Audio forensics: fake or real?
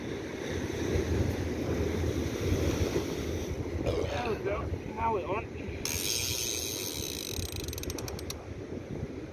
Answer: real